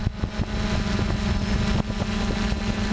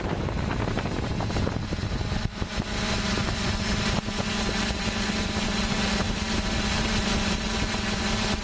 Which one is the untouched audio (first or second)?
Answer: first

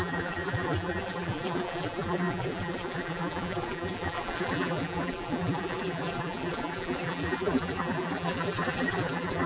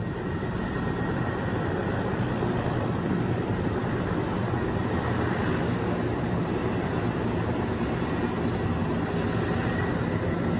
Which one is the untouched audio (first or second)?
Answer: second